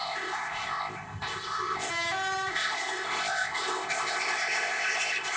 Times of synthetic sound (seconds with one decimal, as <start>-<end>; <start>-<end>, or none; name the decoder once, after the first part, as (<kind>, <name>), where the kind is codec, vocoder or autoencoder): 0.0-1.9 (codec, ZipCodec); 2.5-5.4